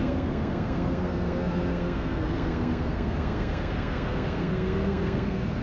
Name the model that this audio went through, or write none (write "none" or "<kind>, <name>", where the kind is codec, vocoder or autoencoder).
codec, SNAC